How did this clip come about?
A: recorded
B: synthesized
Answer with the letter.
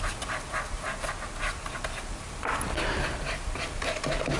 A